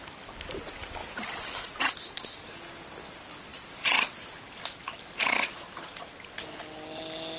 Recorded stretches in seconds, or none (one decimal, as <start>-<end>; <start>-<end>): 0.0-3.5; 4.1-7.4